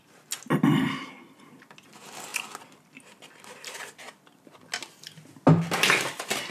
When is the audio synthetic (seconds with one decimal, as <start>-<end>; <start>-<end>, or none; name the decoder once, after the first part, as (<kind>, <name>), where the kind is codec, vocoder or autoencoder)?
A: none